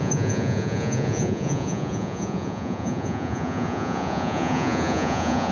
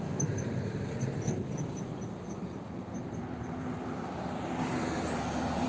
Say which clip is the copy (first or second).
first